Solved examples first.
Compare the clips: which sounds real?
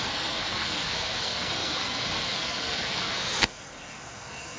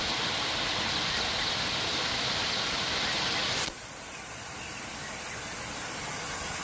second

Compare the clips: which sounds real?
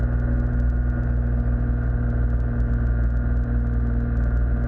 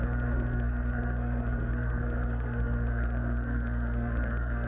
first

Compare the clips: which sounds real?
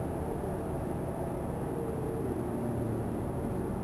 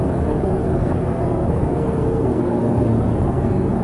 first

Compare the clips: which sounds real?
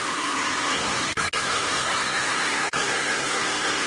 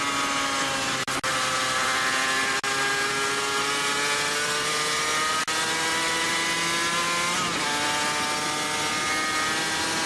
second